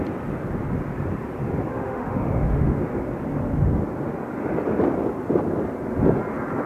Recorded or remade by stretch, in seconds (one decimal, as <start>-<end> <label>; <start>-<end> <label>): 0.0-1.7 recorded; 1.7-2.8 remade; 2.8-6.7 recorded